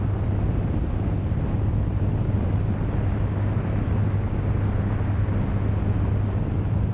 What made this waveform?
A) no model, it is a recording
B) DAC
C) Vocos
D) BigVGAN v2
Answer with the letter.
A